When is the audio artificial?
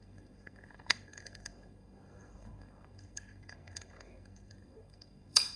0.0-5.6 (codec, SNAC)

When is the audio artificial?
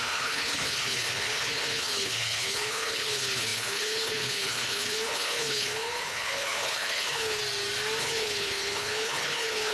0.0-7.4 (codec, HILCodec); 8.0-9.7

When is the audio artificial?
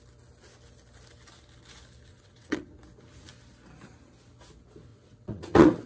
2.1-2.6 (vocoder, WaveNeXt); 4.9-5.9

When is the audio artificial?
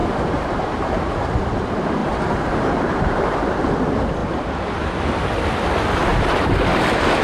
0.0-1.1 (vocoder, BigVGAN v2); 2.0-3.6; 6.1-7.2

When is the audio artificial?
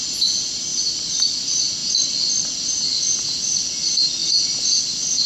0.7-1.4 (vocoder, BigVGAN v2); 4.2-4.8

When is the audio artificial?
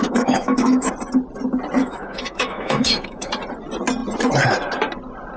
0.0-0.9 (autoencoder, DAC-VAE); 1.8-3.3